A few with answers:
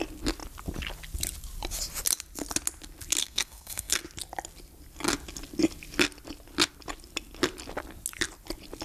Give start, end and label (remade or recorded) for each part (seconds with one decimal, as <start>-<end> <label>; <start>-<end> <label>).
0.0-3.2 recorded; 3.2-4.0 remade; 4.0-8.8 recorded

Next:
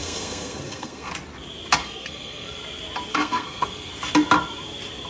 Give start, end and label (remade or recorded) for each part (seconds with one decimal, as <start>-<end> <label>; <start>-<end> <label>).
0.0-1.1 remade; 1.1-1.8 recorded; 1.8-2.6 remade; 2.6-3.1 recorded; 3.1-3.9 remade; 3.9-5.1 recorded

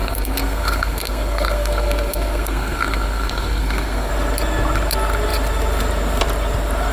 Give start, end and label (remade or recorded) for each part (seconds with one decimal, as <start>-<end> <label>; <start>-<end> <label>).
0.0-4.1 remade; 4.1-6.9 recorded

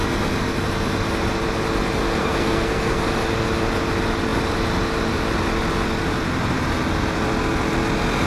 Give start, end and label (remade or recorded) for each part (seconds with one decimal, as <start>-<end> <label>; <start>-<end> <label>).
0.0-2.2 recorded; 2.2-3.0 remade; 3.0-8.3 recorded